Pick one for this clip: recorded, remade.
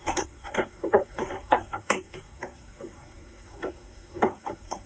remade